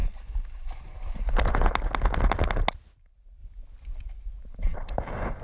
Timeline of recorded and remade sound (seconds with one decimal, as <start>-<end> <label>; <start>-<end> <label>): 0.0-1.5 remade; 1.5-5.4 recorded